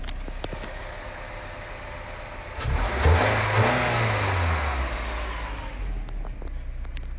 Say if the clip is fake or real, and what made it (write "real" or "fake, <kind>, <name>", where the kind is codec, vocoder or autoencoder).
real